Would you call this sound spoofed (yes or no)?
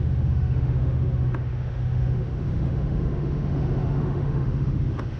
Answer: yes